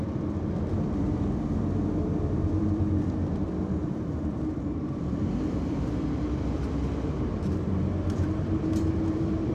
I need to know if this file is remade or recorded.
remade